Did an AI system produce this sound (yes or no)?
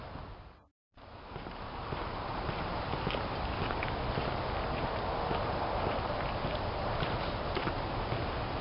no